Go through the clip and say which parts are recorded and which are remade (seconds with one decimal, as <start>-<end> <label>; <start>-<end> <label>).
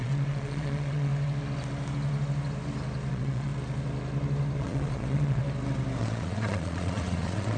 0.0-1.1 remade; 1.1-3.1 recorded; 3.1-3.5 remade; 3.5-4.6 recorded; 4.6-5.4 remade; 5.4-6.0 recorded; 6.0-7.6 remade